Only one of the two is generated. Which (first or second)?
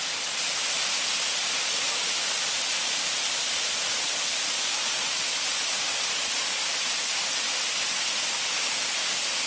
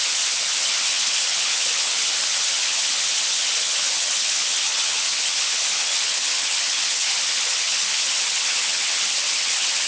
second